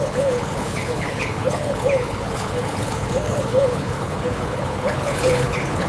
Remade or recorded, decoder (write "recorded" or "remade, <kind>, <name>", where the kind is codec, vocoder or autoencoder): remade, codec, HILCodec